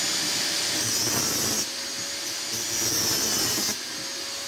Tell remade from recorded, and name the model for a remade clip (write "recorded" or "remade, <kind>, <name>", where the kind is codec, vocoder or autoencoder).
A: recorded